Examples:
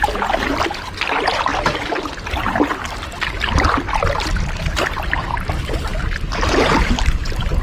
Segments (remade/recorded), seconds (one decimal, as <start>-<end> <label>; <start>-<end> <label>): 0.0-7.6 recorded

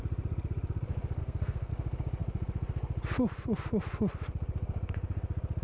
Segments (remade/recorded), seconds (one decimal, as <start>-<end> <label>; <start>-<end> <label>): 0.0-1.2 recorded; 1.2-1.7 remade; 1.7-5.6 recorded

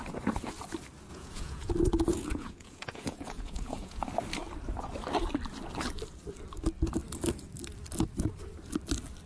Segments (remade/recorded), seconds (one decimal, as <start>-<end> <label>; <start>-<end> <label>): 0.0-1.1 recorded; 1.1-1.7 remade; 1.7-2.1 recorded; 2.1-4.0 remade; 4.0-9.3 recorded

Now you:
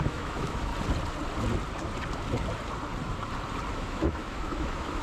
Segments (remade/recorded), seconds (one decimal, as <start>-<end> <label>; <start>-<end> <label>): 0.0-0.7 remade; 0.7-3.7 recorded; 3.7-5.0 remade